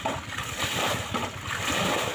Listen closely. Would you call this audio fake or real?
real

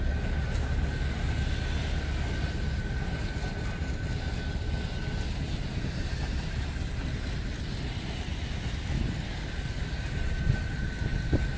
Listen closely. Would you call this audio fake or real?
real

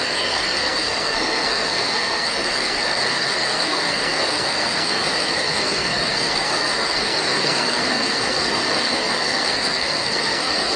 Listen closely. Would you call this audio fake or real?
fake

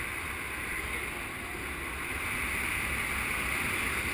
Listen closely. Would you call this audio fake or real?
real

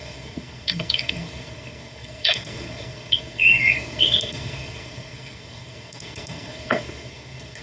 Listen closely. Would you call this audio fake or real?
fake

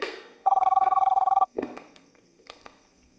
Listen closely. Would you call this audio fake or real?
fake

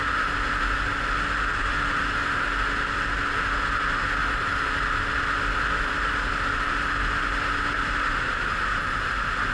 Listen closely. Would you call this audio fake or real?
real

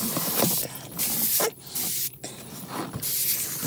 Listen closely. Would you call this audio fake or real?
real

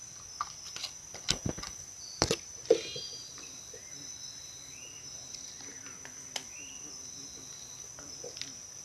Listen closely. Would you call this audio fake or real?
real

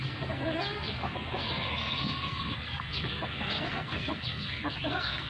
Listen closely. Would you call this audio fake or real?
fake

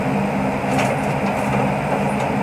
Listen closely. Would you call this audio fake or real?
real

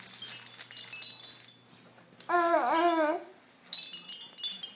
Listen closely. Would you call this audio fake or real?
real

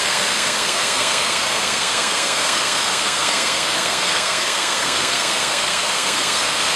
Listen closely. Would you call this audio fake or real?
fake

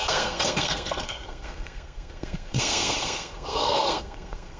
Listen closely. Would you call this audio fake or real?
fake